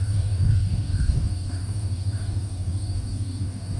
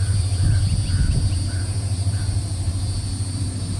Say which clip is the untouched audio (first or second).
second